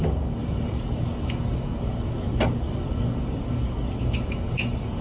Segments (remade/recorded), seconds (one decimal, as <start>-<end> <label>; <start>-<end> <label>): 0.0-5.0 remade